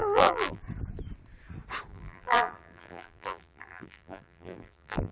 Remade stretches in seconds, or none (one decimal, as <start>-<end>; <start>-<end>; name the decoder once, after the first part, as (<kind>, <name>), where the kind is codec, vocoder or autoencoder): 0.0-0.6 (vocoder, BigVGAN v2); 1.9-5.1